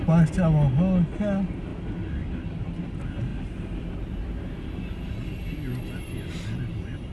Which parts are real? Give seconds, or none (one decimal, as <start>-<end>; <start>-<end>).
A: 0.0-7.1